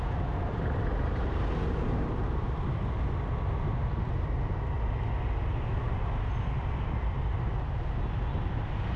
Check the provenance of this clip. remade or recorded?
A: recorded